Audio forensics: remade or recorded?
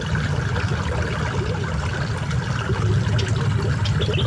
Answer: recorded